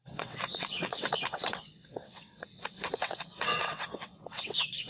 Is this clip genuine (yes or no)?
no